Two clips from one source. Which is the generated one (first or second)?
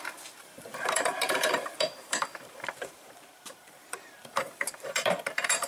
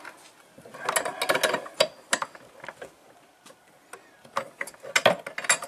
first